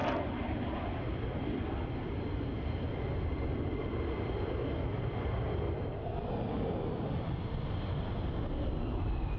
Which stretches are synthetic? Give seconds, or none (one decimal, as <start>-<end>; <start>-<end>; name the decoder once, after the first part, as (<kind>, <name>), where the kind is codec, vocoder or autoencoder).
none